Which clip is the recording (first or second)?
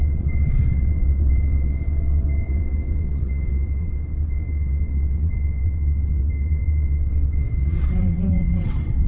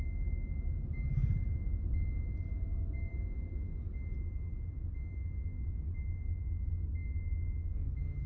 second